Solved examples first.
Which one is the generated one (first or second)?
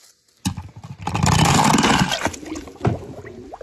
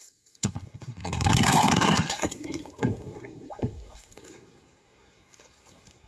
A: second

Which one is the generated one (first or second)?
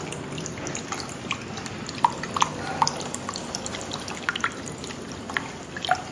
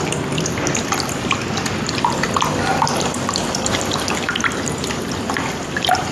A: second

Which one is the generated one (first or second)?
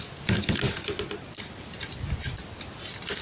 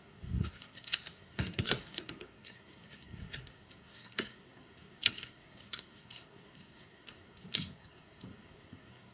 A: second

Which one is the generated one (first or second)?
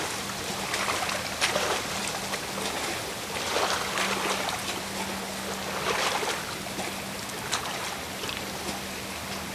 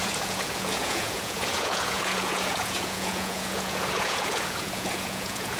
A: second